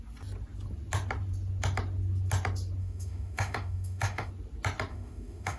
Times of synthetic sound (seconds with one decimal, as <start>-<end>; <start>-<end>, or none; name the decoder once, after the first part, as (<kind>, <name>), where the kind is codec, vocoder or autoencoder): 2.8-4.3 (autoencoder, DAC-VAE); 4.9-5.6